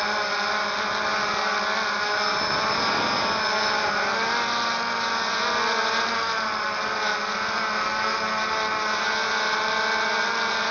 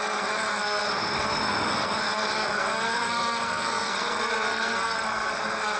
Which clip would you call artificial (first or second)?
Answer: second